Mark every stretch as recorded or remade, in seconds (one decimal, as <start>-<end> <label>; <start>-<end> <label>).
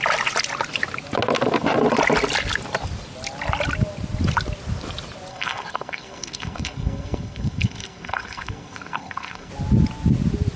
0.0-5.3 recorded; 5.3-9.5 remade; 9.5-10.6 recorded